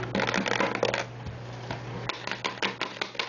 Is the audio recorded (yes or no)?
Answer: yes